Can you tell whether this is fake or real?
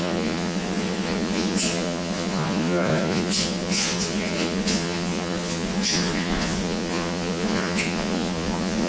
fake